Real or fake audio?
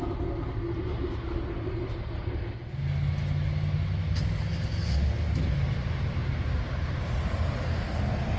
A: real